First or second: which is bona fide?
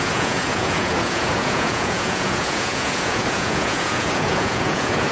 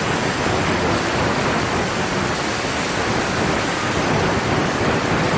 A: second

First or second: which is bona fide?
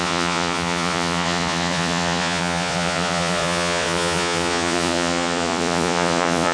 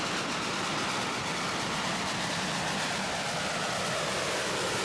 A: second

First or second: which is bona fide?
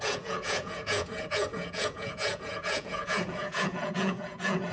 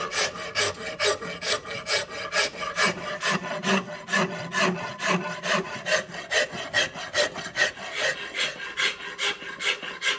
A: second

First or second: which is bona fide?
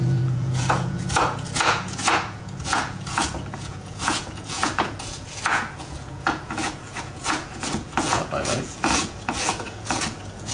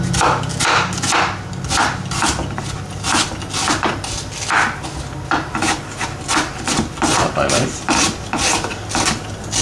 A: second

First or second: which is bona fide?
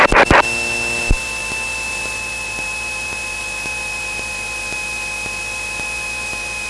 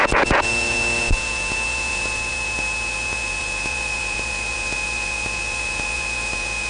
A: first